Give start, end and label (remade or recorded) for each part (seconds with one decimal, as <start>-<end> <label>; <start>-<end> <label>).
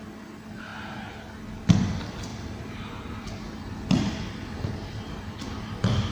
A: 0.0-6.1 recorded